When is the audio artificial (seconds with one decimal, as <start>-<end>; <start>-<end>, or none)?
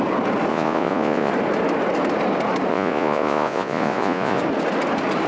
0.5-1.3; 2.7-4.4